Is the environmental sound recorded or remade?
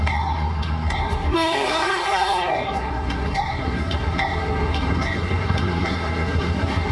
remade